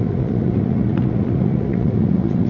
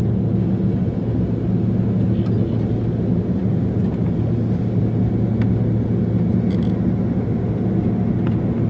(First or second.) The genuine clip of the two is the second